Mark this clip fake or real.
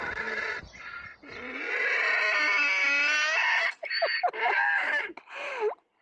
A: real